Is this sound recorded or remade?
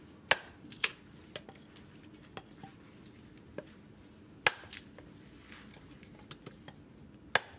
recorded